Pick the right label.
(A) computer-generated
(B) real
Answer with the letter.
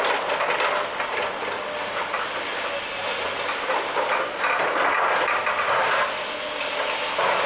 B